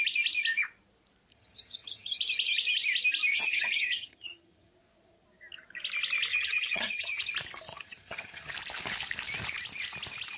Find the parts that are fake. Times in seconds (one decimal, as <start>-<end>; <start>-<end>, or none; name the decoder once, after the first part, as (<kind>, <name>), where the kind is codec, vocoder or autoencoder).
1.3-2.2 (vocoder, HiFi-GAN); 3.3-4.7; 6.3-7.3; 7.7-8.5